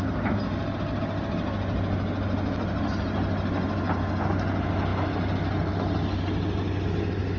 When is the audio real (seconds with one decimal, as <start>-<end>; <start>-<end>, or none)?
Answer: 0.0-7.4